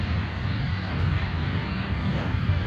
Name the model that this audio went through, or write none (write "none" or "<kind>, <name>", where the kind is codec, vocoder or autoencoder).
codec, DAC